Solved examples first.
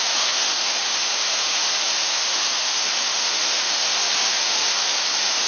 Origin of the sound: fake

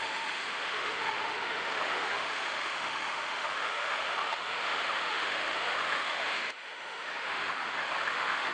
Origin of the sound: fake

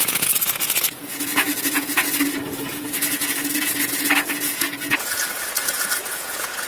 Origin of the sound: fake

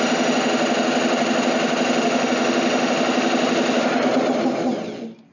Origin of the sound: real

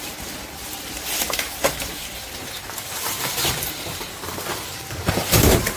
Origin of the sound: fake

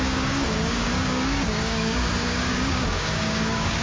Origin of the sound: fake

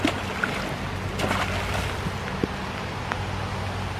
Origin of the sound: real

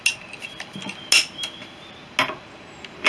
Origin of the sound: real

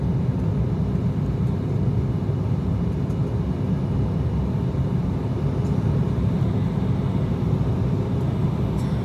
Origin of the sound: real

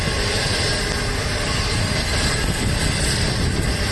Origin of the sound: real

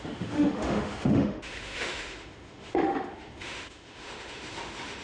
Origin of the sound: fake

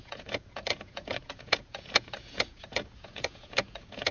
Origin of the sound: fake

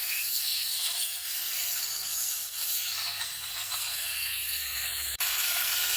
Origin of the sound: fake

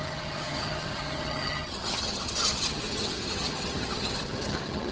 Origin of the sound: fake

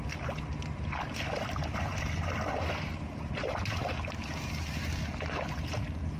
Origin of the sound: real